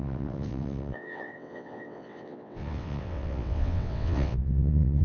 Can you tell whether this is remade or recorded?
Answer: remade